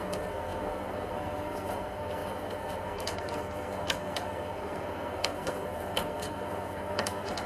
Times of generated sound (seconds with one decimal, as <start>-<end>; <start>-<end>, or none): 0.0-7.5